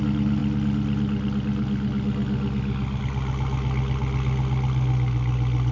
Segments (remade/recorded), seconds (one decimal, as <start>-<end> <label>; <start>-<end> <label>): 0.0-5.7 recorded